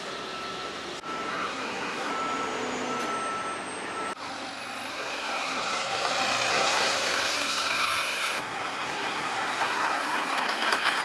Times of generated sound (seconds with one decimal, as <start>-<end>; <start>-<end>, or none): 1.3-2.1; 4.9-6.1; 6.5-11.0